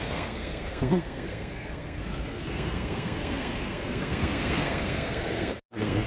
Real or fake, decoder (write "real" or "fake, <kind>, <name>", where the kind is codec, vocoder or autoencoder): fake, codec, SNAC